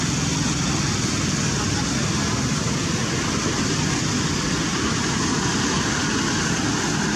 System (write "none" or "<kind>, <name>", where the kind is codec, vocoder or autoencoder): none